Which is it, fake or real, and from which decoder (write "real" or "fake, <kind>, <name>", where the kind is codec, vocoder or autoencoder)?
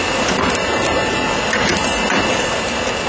real